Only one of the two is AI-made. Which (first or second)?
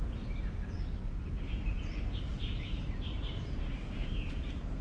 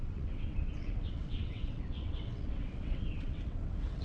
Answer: second